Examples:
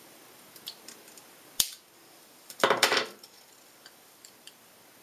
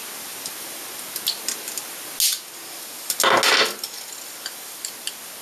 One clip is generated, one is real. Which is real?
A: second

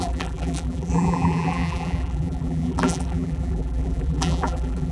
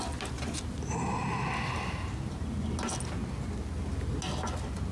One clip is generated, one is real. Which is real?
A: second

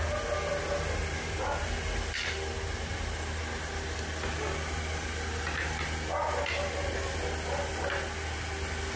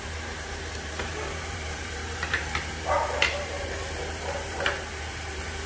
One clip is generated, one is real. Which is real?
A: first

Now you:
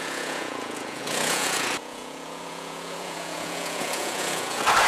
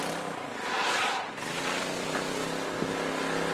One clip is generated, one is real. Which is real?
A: second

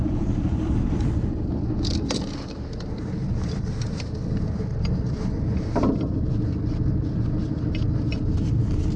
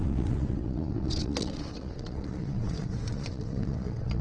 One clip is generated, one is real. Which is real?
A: first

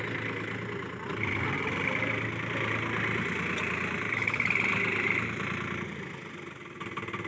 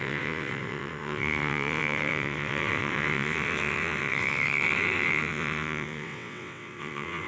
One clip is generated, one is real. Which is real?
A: first